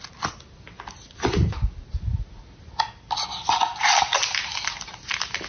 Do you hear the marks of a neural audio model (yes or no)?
no